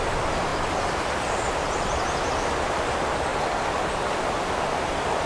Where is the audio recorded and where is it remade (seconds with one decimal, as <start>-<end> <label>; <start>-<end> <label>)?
0.0-0.5 recorded; 0.5-2.3 remade; 2.3-5.3 recorded